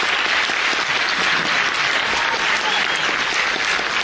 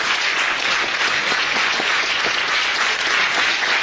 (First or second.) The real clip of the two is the first